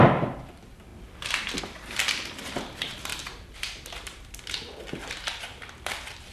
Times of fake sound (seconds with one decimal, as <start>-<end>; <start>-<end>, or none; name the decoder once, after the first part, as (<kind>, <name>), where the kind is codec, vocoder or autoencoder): 0.0-6.3 (vocoder, BigVGAN v2)